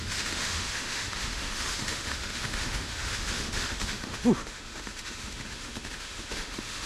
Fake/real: fake